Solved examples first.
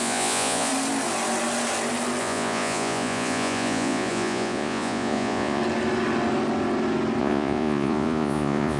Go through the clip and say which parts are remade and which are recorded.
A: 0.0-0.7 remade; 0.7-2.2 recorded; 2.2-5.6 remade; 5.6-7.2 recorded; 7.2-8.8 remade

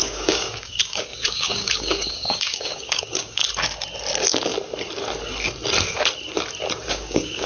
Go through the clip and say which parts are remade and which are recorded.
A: 0.0-3.4 remade; 3.4-6.9 recorded; 6.9-7.5 remade